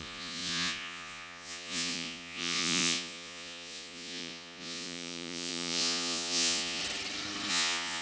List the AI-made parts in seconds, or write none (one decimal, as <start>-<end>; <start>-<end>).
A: 0.0-6.8; 7.5-8.0